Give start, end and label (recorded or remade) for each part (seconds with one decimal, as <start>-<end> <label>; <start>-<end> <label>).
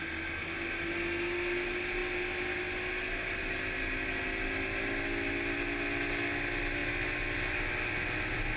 0.0-8.6 recorded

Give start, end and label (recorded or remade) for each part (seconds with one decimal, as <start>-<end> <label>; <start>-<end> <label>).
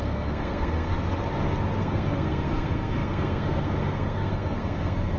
0.0-0.9 remade; 0.9-1.8 recorded; 1.8-5.2 remade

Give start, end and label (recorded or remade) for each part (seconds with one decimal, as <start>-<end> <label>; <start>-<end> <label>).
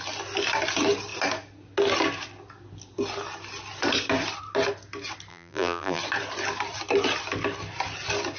0.0-5.3 recorded; 5.3-6.0 remade; 6.0-8.4 recorded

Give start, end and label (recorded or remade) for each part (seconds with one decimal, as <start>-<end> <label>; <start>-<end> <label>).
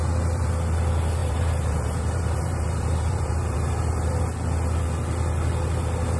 0.0-0.5 remade; 0.5-1.2 recorded; 1.2-4.2 remade; 4.2-6.2 recorded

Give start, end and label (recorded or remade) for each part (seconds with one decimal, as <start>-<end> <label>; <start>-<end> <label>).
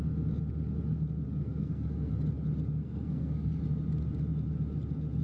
0.0-1.4 recorded; 1.4-2.1 remade; 2.1-2.8 recorded; 2.8-3.6 remade; 3.6-5.2 recorded